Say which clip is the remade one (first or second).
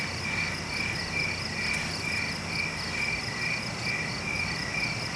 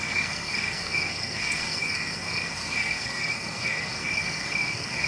second